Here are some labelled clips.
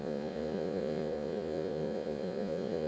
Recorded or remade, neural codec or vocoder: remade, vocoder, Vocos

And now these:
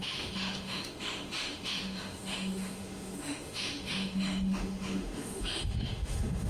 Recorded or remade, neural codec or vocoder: remade, autoencoder, DAC-VAE